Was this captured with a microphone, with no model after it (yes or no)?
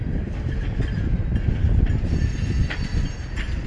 yes